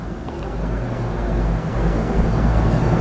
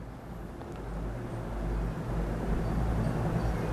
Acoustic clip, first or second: second